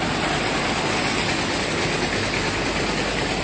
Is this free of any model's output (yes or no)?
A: yes